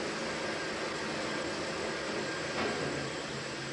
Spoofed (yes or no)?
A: no